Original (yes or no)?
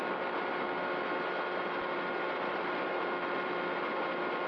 yes